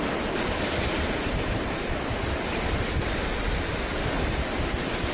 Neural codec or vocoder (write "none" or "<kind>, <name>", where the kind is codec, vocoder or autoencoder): none